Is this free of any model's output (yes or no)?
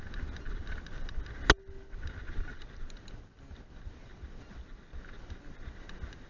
yes